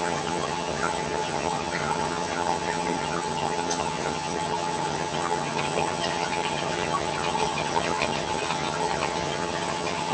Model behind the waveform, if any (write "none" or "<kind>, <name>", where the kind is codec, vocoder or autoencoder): vocoder, HiFi-GAN